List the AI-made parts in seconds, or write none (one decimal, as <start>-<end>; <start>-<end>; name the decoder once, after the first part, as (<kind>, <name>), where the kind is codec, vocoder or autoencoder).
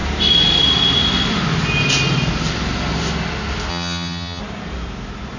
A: 3.7-4.4 (vocoder, HiFi-GAN)